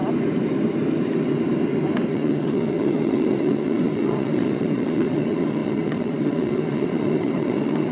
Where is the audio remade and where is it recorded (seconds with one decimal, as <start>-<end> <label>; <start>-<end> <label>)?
0.0-2.1 recorded; 2.1-7.9 remade